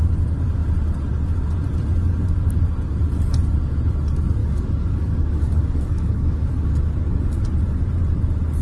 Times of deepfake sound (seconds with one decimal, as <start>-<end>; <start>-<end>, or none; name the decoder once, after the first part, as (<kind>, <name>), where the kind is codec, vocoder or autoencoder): 4.4-6.9 (codec, DAC)